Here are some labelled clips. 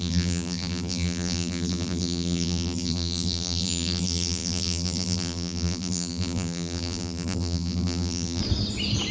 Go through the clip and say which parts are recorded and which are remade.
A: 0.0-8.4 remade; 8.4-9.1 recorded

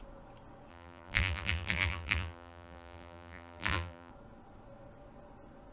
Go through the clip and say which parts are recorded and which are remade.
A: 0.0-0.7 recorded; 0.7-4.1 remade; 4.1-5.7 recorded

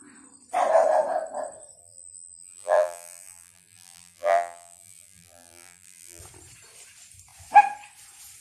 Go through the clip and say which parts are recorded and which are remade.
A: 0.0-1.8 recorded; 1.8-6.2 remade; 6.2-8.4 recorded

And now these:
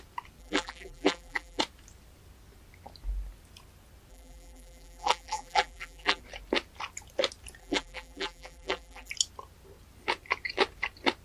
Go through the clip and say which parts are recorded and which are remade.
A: 0.0-0.4 recorded; 0.4-1.6 remade; 1.6-4.1 recorded; 4.1-6.2 remade; 6.2-7.6 recorded; 7.6-9.1 remade; 9.1-11.2 recorded

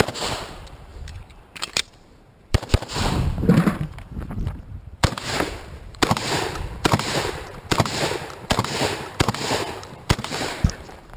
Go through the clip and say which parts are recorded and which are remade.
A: 0.0-11.2 remade

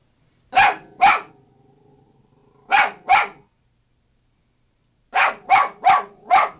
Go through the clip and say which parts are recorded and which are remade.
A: 0.0-6.6 recorded

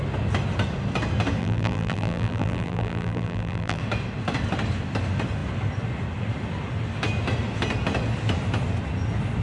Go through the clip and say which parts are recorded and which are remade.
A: 0.0-1.4 recorded; 1.4-3.8 remade; 3.8-9.4 recorded

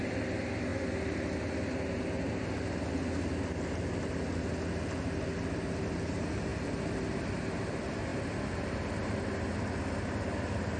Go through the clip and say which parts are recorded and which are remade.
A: 0.0-10.8 recorded